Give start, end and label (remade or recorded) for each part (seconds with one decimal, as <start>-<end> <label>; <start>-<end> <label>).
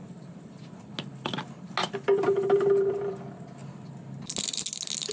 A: 0.0-5.1 recorded